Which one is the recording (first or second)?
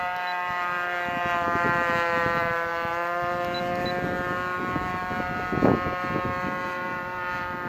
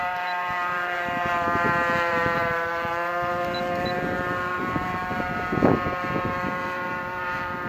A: first